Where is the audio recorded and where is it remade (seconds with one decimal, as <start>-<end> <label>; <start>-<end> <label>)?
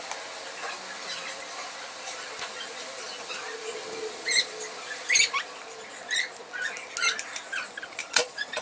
0.0-8.0 recorded; 8.0-8.6 remade